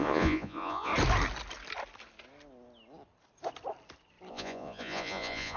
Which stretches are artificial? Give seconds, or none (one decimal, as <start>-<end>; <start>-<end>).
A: 0.0-0.9; 4.3-5.6